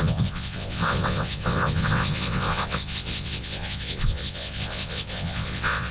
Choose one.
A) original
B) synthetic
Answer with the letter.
B